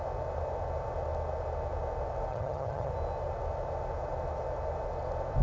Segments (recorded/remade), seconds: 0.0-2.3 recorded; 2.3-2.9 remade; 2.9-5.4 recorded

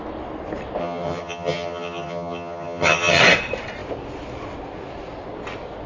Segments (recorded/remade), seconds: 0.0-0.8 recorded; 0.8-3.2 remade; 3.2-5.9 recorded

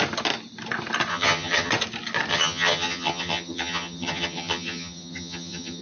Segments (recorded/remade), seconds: 0.0-1.1 recorded; 1.1-1.7 remade; 1.7-2.3 recorded; 2.3-5.8 remade

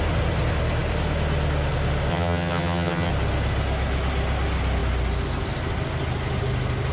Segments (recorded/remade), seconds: 0.0-2.1 recorded; 2.1-3.1 remade; 3.1-6.9 recorded

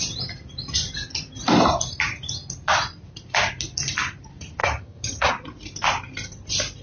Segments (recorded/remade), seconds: 0.0-4.6 recorded; 4.6-5.3 remade; 5.3-6.8 recorded

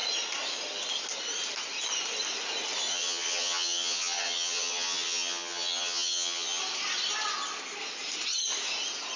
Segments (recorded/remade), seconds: 0.0-2.9 recorded; 2.9-6.6 remade; 6.6-9.2 recorded

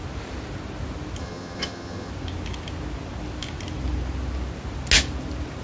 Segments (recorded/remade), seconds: 0.0-1.2 recorded; 1.2-2.1 remade; 2.1-5.6 recorded